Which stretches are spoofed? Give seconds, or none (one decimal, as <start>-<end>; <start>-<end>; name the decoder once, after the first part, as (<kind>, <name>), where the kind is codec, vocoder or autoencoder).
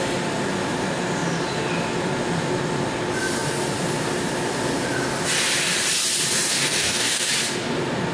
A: 6.6-7.3 (codec, DAC)